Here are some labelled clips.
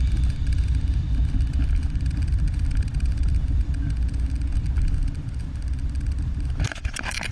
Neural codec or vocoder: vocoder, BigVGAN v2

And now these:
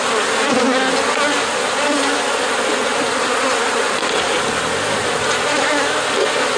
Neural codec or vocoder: none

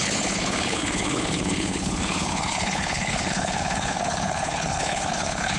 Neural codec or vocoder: codec, HILCodec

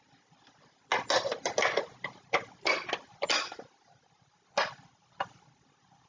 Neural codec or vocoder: none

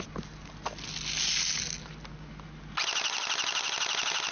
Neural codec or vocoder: none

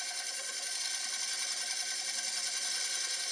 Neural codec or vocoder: none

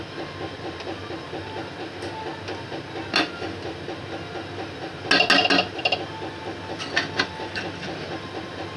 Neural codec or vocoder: none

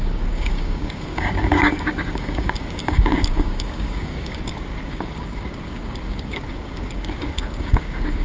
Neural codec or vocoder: codec, DAC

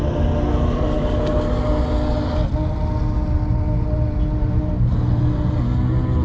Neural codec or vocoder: none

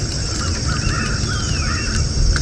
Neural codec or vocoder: none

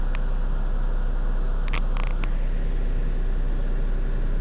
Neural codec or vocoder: none